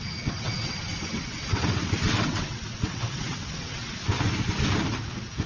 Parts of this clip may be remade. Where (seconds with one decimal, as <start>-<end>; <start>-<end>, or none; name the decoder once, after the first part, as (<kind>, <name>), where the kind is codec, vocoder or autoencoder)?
0.0-4.0 (vocoder, WaveNeXt)